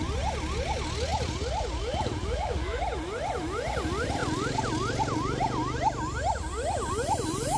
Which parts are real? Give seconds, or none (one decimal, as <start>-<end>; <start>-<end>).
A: 0.0-2.2; 2.8-7.6